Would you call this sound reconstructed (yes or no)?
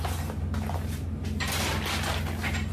no